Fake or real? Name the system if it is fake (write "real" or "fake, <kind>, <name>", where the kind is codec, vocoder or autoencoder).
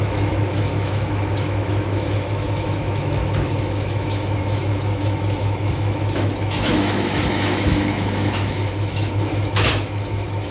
fake, autoencoder, DAC-VAE